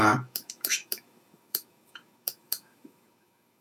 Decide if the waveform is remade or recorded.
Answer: remade